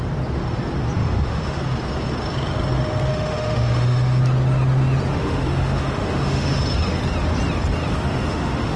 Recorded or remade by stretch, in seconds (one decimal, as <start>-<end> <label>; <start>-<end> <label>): 0.0-1.0 recorded; 1.0-1.6 remade; 1.6-3.1 recorded; 3.1-4.2 remade; 4.2-5.1 recorded; 5.1-6.6 remade; 6.6-7.9 recorded; 7.9-8.8 remade